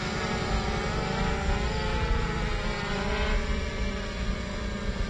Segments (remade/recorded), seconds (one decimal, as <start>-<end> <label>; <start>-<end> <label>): 0.0-5.1 recorded